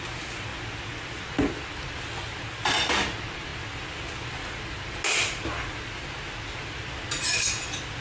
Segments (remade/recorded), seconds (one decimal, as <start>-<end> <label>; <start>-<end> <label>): 0.0-8.0 recorded